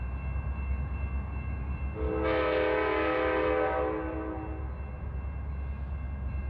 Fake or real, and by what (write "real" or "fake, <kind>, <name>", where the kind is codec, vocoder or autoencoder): real